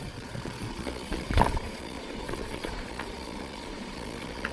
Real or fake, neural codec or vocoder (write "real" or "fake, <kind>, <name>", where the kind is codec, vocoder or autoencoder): fake, vocoder, Vocos